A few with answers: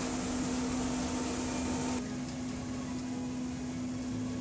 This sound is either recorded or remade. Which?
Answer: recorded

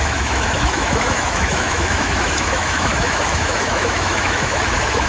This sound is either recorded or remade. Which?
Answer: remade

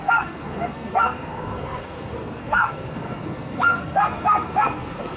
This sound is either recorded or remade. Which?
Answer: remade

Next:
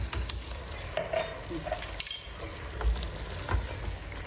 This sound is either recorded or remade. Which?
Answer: recorded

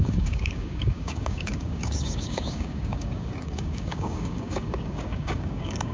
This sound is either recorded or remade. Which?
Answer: remade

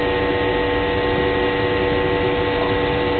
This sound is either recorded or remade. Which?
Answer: recorded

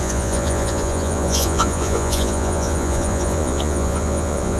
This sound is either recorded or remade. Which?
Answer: remade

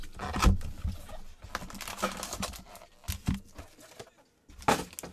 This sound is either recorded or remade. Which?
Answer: recorded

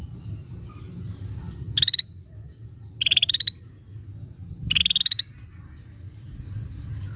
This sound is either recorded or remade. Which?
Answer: recorded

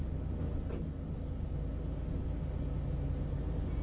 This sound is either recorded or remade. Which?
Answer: recorded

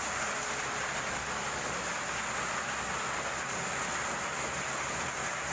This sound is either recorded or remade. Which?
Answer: recorded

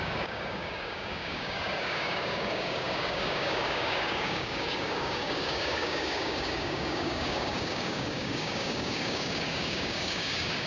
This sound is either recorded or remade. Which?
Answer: remade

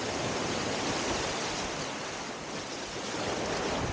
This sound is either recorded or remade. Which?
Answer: recorded